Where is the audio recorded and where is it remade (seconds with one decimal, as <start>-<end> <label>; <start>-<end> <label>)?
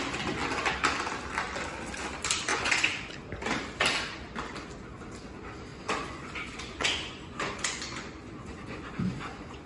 0.0-2.5 recorded; 2.5-3.1 remade; 3.1-5.7 recorded; 5.7-9.7 remade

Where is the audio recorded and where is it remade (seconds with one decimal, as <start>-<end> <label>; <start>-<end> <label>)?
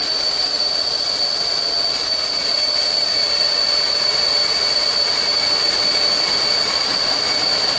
0.0-6.9 recorded; 6.9-7.8 remade